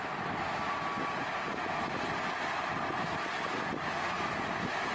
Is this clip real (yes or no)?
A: yes